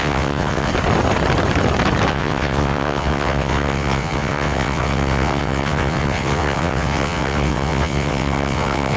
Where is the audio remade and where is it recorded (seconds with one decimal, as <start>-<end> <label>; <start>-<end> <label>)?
0.0-0.7 remade; 0.7-2.1 recorded; 2.1-9.0 remade